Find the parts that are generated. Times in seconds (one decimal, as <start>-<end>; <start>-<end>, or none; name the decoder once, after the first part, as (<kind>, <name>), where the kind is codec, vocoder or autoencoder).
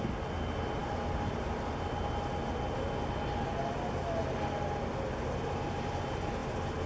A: none